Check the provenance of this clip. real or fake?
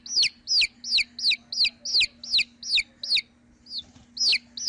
real